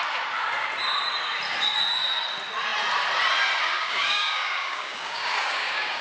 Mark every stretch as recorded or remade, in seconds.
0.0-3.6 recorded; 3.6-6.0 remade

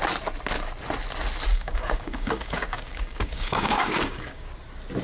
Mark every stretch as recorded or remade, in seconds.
0.0-1.5 recorded; 1.5-4.5 remade; 4.5-5.0 recorded

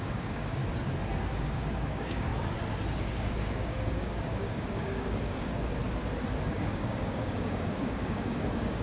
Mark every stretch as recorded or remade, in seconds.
0.0-0.6 remade; 0.6-1.4 recorded; 1.4-2.3 remade; 2.3-3.1 recorded; 3.1-5.8 remade; 5.8-6.5 recorded; 6.5-8.8 remade

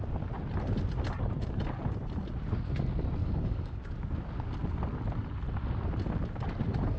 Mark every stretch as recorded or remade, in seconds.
0.0-3.2 recorded; 3.2-3.9 remade; 3.9-7.0 recorded

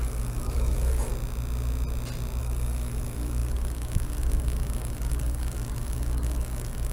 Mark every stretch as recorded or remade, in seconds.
0.0-1.1 remade; 1.1-2.4 recorded; 2.4-6.9 remade

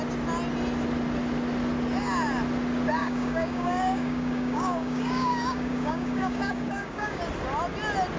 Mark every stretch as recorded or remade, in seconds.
0.0-3.0 recorded; 3.0-7.2 remade; 7.2-8.2 recorded

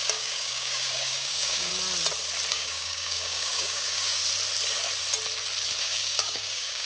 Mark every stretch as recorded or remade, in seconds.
0.0-1.7 remade; 1.7-2.5 recorded; 2.5-4.2 remade; 4.2-5.8 recorded; 5.8-6.9 remade

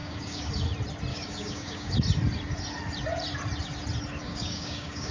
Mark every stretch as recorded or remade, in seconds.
0.0-0.5 remade; 0.5-1.1 recorded; 1.1-1.9 remade; 1.9-4.2 recorded; 4.2-5.1 remade